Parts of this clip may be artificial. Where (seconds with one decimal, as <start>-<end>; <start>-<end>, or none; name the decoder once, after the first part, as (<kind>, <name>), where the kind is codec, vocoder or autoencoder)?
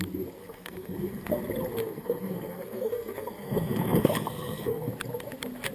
0.4-1.4 (codec, SNAC); 1.8-4.9